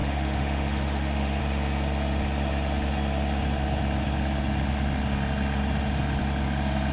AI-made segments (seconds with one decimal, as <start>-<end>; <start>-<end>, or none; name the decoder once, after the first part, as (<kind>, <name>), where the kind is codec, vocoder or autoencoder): 0.0-1.4 (autoencoder, DAC-VAE)